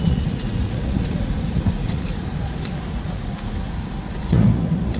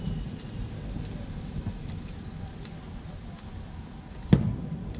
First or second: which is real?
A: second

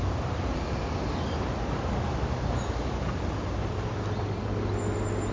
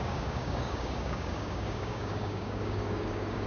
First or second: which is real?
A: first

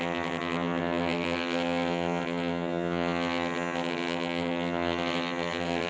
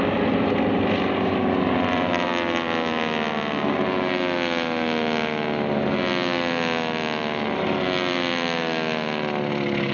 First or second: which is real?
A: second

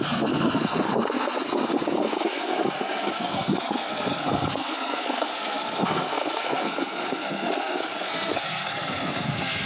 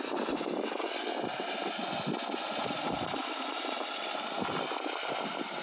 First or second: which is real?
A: second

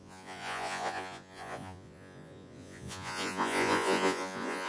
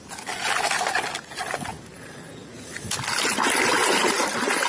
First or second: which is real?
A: second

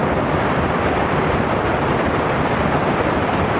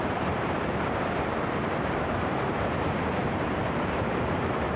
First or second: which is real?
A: first